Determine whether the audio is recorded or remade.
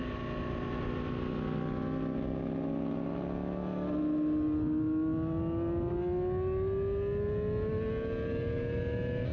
recorded